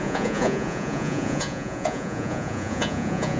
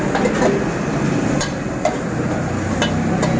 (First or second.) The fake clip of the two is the first